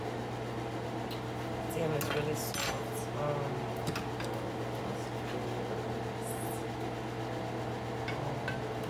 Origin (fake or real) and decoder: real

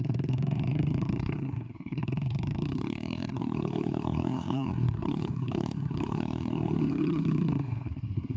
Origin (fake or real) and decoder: fake, codec, SNAC